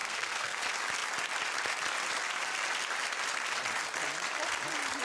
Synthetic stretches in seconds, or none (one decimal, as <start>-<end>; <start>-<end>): 0.0-0.6